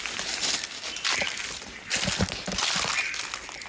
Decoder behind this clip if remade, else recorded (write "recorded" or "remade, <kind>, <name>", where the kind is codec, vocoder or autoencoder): recorded